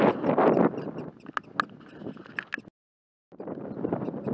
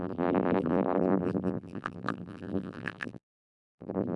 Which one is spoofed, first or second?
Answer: second